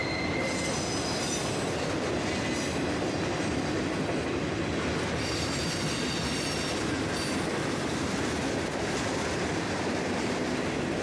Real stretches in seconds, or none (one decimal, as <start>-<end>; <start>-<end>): 0.0-11.0